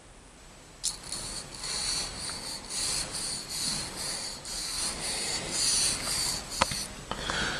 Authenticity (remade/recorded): recorded